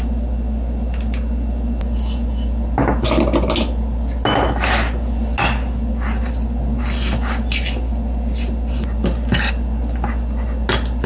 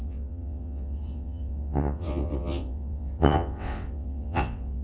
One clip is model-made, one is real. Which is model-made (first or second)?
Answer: second